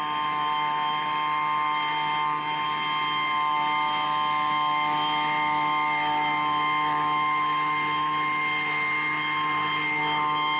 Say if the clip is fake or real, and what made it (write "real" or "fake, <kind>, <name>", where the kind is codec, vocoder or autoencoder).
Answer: real